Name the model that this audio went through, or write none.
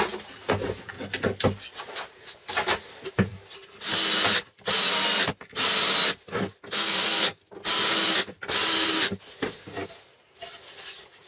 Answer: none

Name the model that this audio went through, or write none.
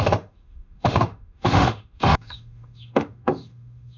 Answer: autoencoder, DAC-VAE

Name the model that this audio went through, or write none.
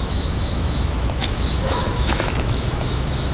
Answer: autoencoder, DAC-VAE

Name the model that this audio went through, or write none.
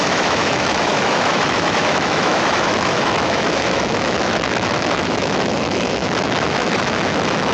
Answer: autoencoder, DAC-VAE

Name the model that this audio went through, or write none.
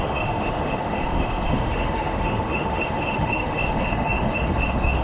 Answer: autoencoder, DAC-VAE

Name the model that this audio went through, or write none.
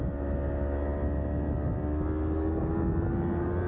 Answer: none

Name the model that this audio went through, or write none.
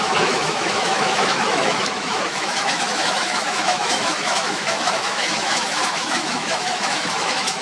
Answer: autoencoder, DAC-VAE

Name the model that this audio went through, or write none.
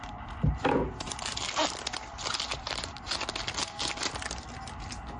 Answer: none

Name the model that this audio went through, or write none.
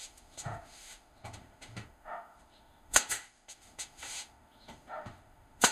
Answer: autoencoder, DAC-VAE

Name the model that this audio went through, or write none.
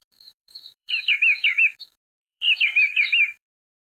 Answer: autoencoder, DAC-VAE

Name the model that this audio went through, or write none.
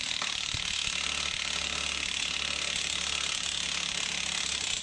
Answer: none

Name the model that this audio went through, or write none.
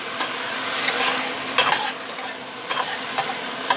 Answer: none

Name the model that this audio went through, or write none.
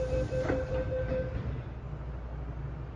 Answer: none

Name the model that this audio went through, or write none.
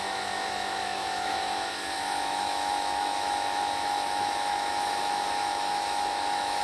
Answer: autoencoder, DAC-VAE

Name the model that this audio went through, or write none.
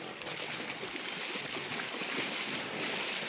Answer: none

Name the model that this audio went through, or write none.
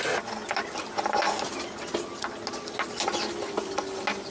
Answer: none